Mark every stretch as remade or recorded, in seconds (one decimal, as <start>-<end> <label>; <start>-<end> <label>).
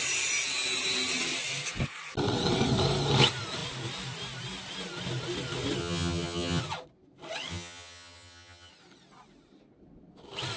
0.0-5.8 recorded; 5.8-6.6 remade; 6.6-7.5 recorded; 7.5-8.7 remade; 8.7-10.6 recorded